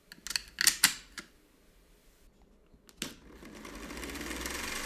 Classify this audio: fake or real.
real